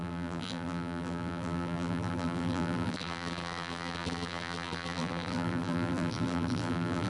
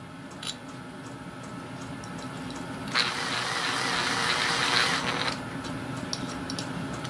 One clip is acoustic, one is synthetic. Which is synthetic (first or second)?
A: first